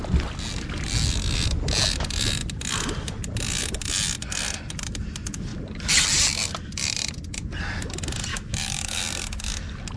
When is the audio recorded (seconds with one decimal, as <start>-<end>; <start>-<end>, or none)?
0.0-8.3; 9.0-10.0